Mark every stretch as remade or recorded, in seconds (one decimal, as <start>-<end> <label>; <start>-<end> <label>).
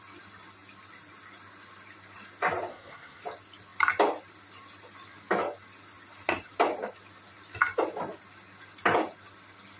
0.0-2.7 recorded; 2.7-3.2 remade; 3.2-9.8 recorded